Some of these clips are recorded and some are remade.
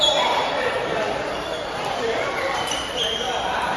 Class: remade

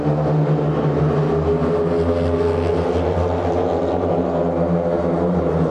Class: recorded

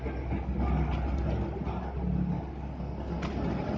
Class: recorded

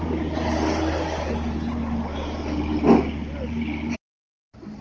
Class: recorded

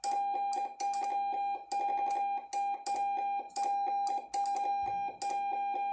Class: recorded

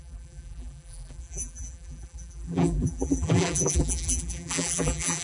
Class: remade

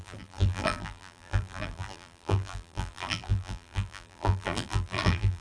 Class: remade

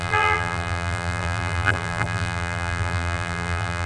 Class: remade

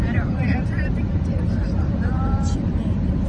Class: remade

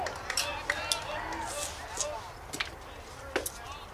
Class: recorded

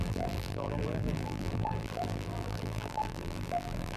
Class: remade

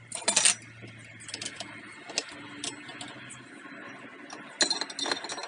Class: recorded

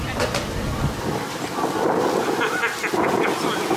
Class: recorded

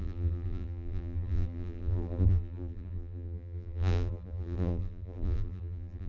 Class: remade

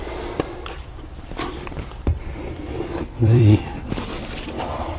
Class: remade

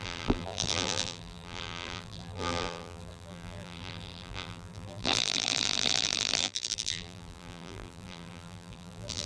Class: remade